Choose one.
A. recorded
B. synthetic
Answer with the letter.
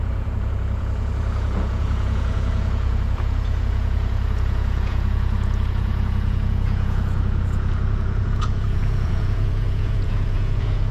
B